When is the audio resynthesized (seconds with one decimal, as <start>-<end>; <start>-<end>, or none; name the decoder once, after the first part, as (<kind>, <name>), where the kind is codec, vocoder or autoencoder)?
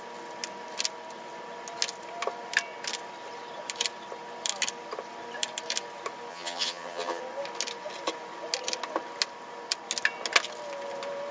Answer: 6.3-7.2 (vocoder, HiFi-GAN)